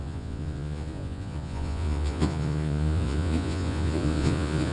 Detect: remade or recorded remade